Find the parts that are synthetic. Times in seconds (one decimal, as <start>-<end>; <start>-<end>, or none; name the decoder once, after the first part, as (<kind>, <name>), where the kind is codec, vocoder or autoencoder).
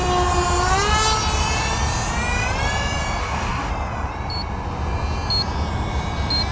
3.2-3.7 (codec, DAC)